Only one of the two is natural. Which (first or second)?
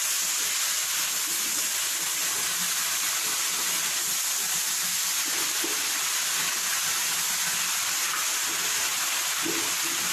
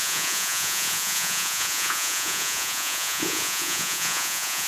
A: first